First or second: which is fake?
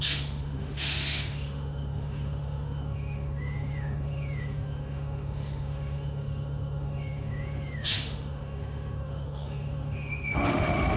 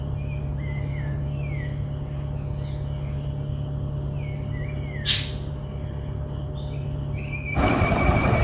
first